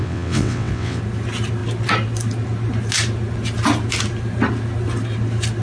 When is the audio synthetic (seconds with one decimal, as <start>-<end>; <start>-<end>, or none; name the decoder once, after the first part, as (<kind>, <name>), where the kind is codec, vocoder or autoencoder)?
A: 0.0-1.0 (vocoder, WaveNeXt)